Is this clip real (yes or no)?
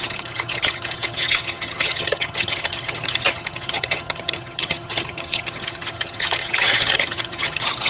no